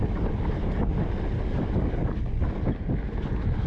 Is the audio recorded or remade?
recorded